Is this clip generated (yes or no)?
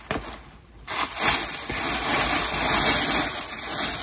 no